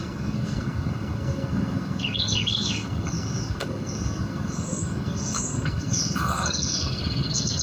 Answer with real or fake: fake